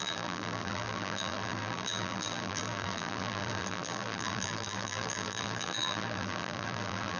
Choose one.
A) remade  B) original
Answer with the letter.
A